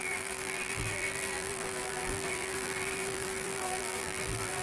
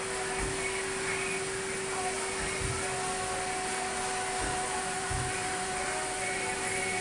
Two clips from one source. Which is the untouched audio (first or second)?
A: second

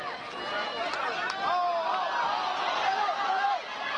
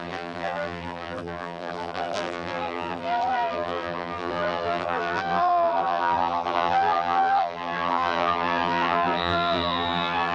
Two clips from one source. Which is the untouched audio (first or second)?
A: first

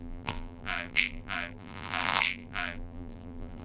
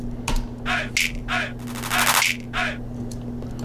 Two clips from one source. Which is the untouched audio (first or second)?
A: second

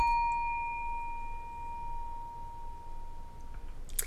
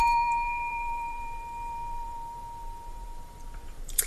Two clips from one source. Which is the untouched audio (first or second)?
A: first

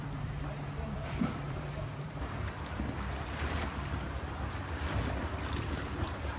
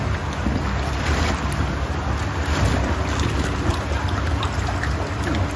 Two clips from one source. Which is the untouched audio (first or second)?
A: second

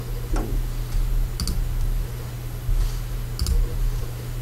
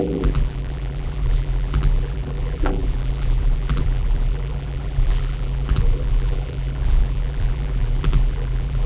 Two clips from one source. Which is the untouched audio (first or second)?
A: first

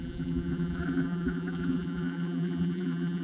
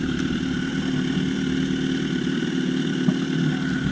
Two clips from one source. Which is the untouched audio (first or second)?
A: second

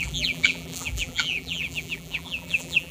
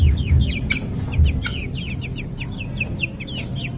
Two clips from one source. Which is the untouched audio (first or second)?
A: second